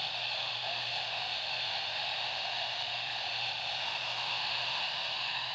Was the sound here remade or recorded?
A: remade